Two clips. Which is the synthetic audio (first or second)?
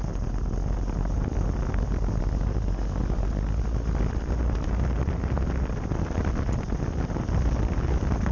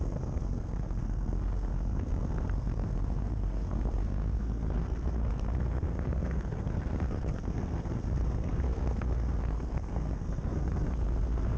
second